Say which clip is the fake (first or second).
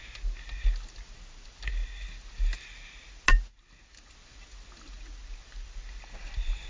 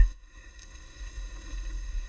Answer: second